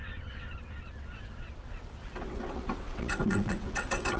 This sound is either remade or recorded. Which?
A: remade